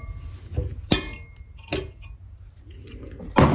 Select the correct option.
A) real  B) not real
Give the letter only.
A